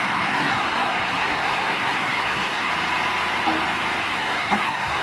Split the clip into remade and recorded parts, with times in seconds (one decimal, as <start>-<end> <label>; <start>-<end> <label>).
0.0-2.7 remade; 2.7-4.0 recorded; 4.0-5.0 remade